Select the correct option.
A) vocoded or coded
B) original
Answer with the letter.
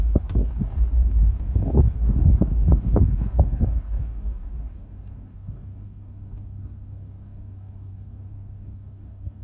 A